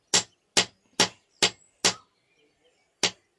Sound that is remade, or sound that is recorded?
recorded